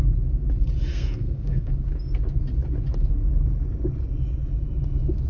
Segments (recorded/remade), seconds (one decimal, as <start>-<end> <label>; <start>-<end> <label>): 0.0-0.9 recorded; 0.9-1.7 remade; 1.7-5.3 recorded